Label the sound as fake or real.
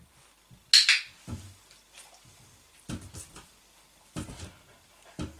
real